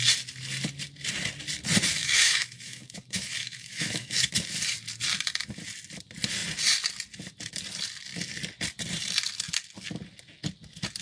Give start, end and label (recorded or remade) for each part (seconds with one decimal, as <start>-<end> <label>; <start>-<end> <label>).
0.0-2.0 recorded; 2.0-4.3 remade; 4.3-11.0 recorded